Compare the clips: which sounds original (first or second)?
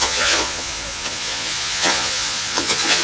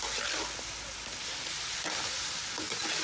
second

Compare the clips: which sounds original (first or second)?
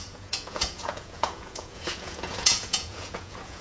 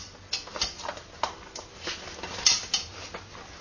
second